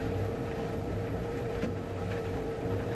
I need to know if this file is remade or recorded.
remade